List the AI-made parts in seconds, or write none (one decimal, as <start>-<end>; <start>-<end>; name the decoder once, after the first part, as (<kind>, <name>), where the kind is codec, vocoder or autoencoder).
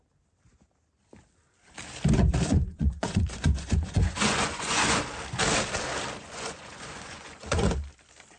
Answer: 2.5-5.0 (vocoder, Vocos); 6.2-7.7